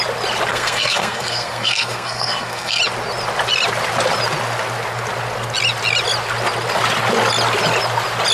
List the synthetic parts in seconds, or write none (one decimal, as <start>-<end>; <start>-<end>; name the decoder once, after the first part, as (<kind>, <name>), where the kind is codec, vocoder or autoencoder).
0.5-2.8 (codec, SNAC)